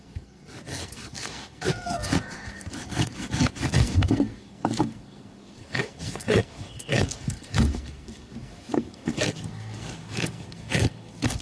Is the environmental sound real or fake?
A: fake